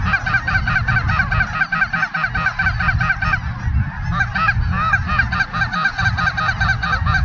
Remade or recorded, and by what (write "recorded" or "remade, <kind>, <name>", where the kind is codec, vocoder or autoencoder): recorded